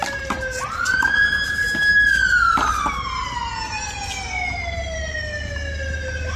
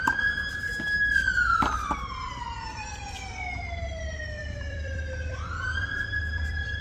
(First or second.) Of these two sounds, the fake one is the second